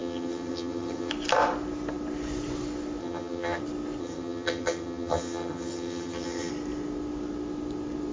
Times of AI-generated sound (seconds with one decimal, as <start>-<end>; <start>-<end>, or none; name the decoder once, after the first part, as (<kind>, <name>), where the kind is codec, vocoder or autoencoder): 0.0-1.1 (vocoder, HiFi-GAN); 3.0-3.6; 4.0-6.5